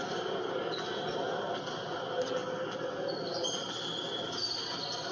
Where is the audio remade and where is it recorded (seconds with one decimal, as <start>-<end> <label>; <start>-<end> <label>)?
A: 0.0-5.1 recorded